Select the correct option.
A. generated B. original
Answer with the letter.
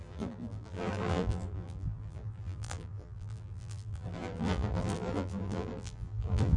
A